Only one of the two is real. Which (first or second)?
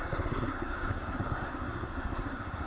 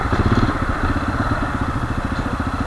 second